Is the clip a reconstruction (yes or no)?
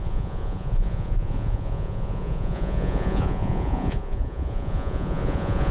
yes